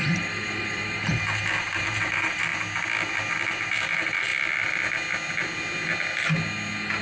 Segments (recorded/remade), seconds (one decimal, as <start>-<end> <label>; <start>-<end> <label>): 0.0-2.5 remade; 2.5-3.6 recorded; 3.6-4.3 remade; 4.3-7.0 recorded

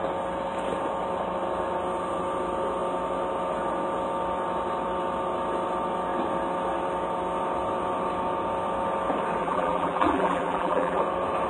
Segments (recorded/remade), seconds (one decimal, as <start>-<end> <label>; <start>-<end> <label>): 0.0-9.4 recorded; 9.4-11.0 remade; 11.0-11.5 recorded

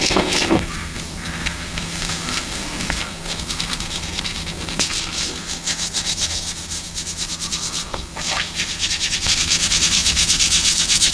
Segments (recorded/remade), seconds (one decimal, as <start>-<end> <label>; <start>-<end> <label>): 0.0-11.1 remade

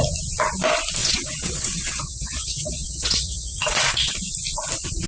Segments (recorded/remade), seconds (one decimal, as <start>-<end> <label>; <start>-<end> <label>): 0.0-1.0 recorded; 1.0-4.1 remade; 4.1-5.1 recorded

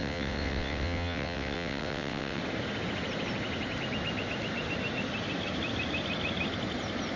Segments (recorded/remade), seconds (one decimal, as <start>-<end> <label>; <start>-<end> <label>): 0.0-2.4 remade; 2.4-7.2 recorded

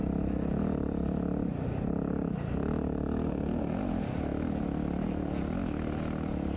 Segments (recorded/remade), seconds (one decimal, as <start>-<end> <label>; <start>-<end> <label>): 0.0-6.6 recorded

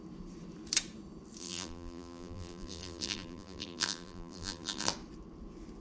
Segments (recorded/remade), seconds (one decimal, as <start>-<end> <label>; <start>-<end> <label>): 0.0-1.4 recorded; 1.4-4.9 remade; 4.9-5.8 recorded